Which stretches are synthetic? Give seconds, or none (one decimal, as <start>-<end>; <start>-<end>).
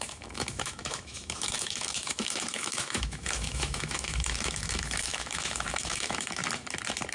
0.0-6.4